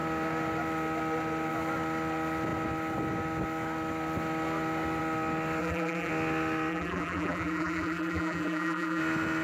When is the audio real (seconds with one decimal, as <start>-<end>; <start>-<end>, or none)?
0.0-5.6; 6.1-6.7; 9.0-9.4